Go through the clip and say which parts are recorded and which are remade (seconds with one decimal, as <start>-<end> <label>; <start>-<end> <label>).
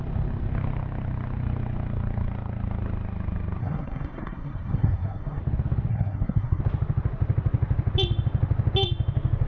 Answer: 0.0-3.6 recorded; 3.6-5.4 remade; 5.4-5.9 recorded; 5.9-6.6 remade; 6.6-9.5 recorded